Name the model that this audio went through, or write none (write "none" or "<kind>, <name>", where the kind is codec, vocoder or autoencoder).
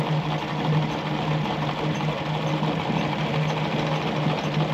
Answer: none